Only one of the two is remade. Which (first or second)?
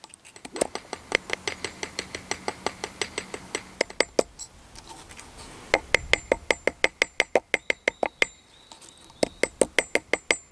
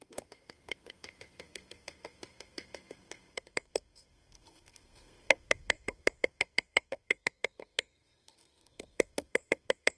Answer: second